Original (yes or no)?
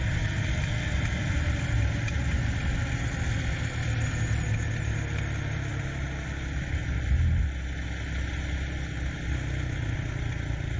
yes